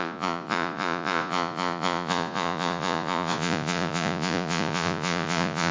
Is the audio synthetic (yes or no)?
yes